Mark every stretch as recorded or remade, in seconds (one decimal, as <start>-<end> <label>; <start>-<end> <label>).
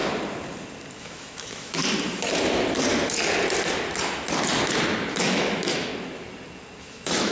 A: 0.0-1.0 recorded; 1.0-1.8 remade; 1.8-5.1 recorded; 5.1-5.9 remade; 5.9-6.8 recorded; 6.8-7.3 remade